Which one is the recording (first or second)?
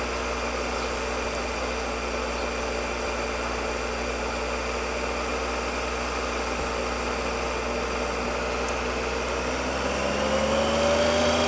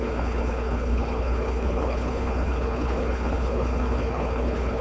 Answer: first